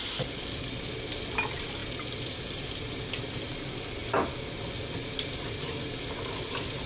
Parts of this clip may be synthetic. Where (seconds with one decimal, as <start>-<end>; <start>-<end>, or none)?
none